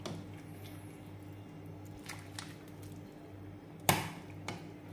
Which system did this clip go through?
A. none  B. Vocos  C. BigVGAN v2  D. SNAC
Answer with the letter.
A